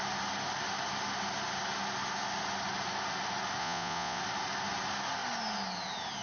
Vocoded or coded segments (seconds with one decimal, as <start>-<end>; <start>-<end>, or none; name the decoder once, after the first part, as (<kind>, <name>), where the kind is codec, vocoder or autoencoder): 3.6-4.2 (vocoder, Vocos)